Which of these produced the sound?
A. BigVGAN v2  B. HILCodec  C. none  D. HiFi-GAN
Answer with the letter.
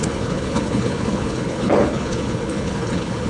B